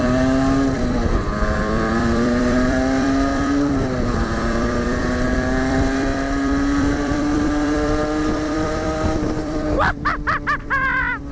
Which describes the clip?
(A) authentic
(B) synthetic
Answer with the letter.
B